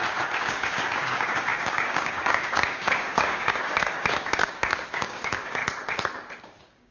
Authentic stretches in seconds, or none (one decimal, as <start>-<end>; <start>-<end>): 5.6-6.4